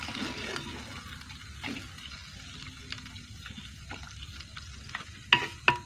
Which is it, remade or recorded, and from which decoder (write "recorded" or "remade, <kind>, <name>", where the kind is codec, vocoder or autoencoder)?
recorded